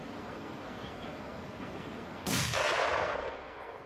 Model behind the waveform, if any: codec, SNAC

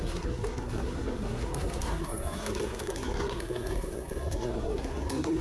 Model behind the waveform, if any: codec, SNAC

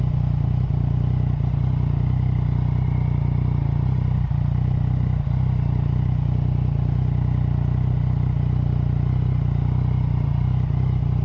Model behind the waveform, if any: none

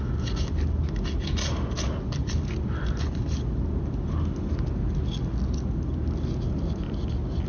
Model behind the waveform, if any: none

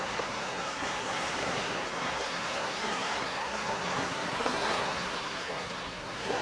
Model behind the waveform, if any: codec, SNAC